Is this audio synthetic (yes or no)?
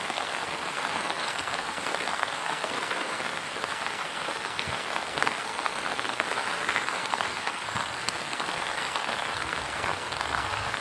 yes